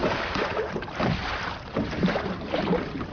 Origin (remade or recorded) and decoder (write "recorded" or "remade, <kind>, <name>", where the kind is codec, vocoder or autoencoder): recorded